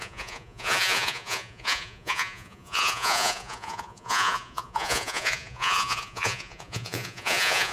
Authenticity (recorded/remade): remade